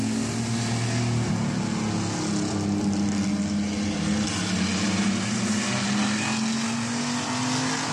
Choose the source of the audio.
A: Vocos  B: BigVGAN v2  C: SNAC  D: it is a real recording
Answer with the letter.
D